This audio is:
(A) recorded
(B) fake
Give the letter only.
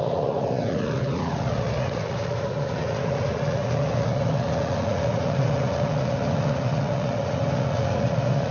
B